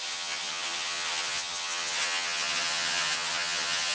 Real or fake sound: fake